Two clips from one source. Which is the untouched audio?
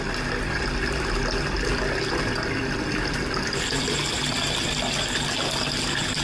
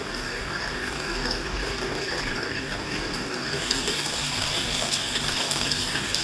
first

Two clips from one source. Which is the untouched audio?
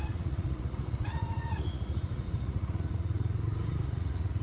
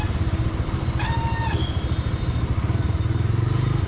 second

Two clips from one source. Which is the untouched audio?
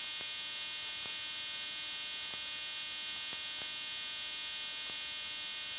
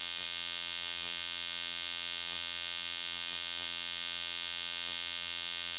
first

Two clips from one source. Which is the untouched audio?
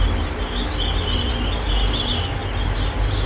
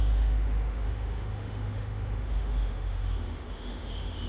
first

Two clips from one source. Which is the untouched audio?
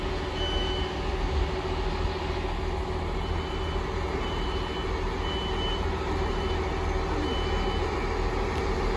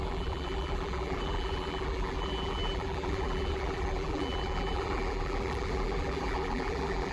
first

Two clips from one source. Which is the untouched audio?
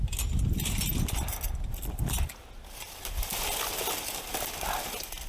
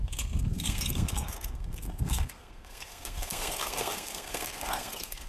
first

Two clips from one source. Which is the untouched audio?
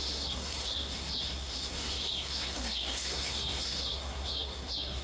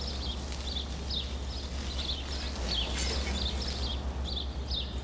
second